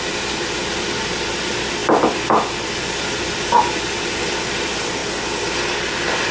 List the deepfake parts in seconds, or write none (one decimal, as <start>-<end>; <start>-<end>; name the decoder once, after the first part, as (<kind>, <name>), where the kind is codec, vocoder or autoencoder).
none